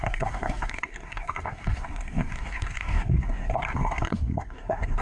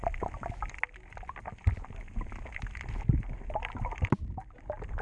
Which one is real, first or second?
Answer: second